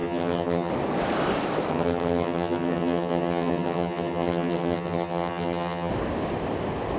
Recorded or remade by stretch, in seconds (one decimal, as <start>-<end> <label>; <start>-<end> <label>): 0.0-0.7 remade; 0.7-1.7 recorded; 1.7-5.9 remade; 5.9-7.0 recorded